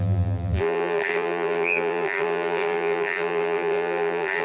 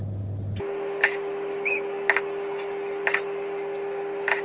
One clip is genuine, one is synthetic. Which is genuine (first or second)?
second